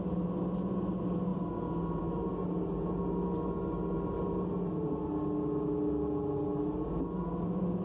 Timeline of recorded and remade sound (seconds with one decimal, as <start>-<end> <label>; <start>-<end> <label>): 0.0-7.8 recorded